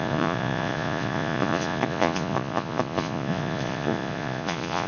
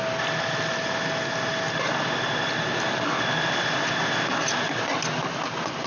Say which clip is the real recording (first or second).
second